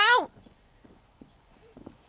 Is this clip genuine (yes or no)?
no